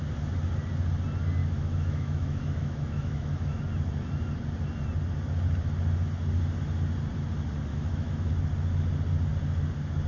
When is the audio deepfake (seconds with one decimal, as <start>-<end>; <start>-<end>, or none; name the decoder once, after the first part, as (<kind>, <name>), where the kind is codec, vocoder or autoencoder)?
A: 1.4-3.6 (autoencoder, DAC-VAE); 7.7-8.3